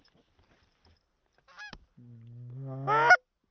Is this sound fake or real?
real